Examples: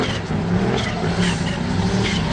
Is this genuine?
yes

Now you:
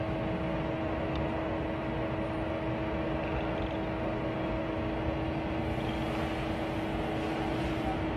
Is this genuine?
yes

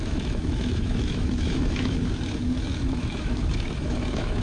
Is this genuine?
no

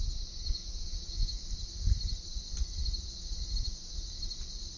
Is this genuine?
yes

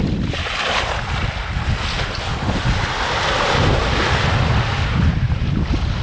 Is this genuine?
yes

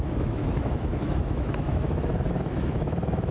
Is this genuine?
no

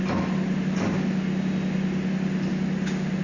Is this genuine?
yes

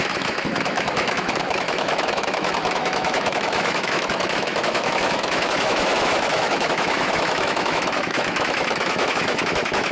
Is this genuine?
no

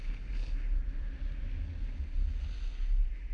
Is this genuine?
yes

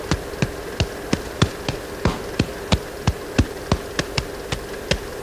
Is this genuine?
yes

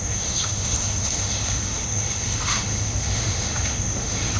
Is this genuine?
no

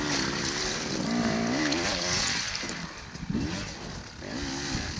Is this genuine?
yes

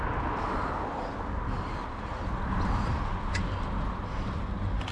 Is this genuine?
yes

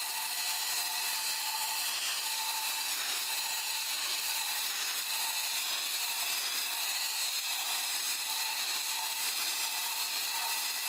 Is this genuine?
yes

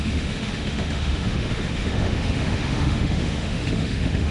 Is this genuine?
no